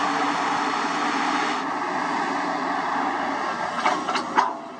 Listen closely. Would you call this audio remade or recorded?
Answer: recorded